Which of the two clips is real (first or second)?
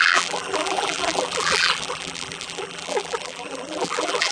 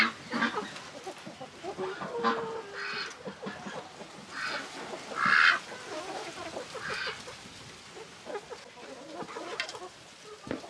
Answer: second